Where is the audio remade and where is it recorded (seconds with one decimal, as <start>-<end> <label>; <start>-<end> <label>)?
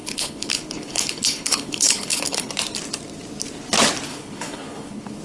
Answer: 0.0-2.5 remade; 2.5-4.1 recorded; 4.1-5.2 remade